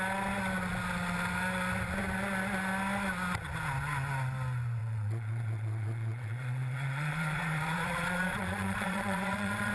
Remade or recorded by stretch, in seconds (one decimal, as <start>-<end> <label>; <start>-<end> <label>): 0.0-4.8 recorded; 4.8-9.7 remade